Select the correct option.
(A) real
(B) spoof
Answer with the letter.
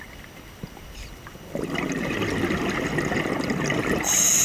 A